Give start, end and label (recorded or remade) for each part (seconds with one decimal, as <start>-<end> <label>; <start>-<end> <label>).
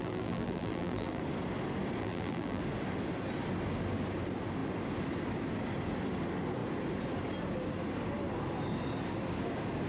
0.0-1.2 remade; 1.2-2.0 recorded; 2.0-2.6 remade; 2.6-9.9 recorded